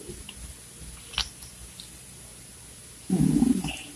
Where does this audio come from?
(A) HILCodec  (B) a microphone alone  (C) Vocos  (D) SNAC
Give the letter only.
B